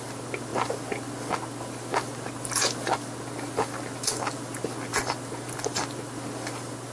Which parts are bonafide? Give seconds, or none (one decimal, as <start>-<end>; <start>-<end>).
0.0-6.9